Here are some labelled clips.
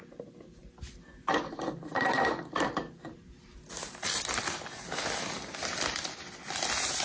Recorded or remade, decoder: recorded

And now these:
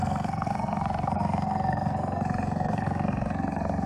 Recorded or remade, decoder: remade, codec, SNAC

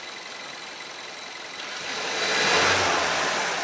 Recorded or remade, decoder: recorded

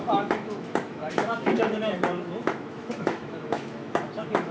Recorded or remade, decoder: remade, autoencoder, DAC-VAE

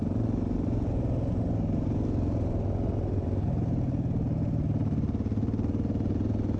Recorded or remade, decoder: recorded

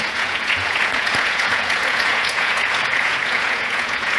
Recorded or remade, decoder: remade, vocoder, Vocos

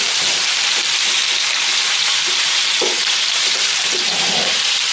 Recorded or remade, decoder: remade, vocoder, BigVGAN v2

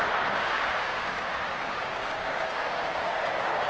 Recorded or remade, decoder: remade, codec, DAC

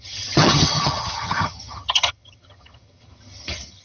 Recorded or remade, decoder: remade, vocoder, HiFi-GAN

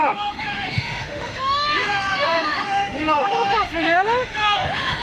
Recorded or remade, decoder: remade, autoencoder, DAC-VAE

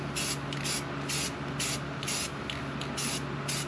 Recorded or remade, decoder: recorded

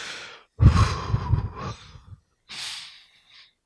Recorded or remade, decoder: recorded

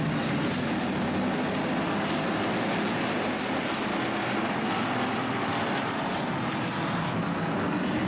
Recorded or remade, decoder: recorded